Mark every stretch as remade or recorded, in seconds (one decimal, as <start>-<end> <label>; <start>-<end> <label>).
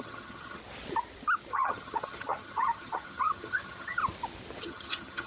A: 0.0-0.6 remade; 0.6-1.5 recorded; 1.5-4.0 remade; 4.0-4.6 recorded; 4.6-5.3 remade